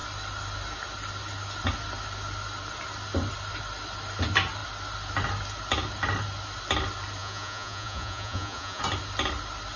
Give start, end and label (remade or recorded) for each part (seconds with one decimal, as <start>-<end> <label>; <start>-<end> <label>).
0.0-7.2 recorded; 7.2-8.8 remade; 8.8-9.8 recorded